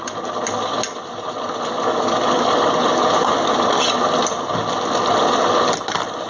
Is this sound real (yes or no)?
yes